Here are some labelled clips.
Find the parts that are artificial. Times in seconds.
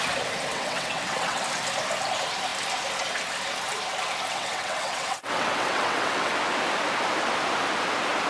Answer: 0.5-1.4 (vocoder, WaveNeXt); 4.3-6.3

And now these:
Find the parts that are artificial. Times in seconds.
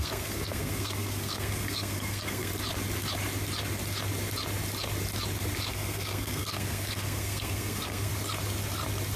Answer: 0.0-2.5 (codec, SNAC); 5.7-8.1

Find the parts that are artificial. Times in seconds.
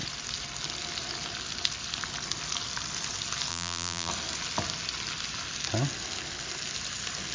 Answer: 3.5-4.1 (vocoder, BigVGAN v2)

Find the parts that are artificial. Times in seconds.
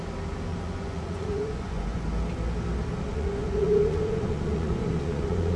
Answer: 0.5-2.0 (vocoder, Vocos); 3.1-5.6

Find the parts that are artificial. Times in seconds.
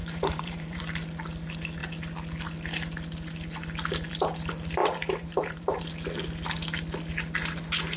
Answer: 0.0-0.8 (vocoder, BigVGAN v2); 4.8-5.8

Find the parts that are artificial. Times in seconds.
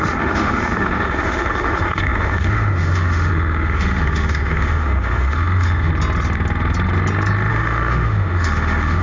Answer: 0.0-5.9 (autoencoder, DAC-VAE); 7.5-9.0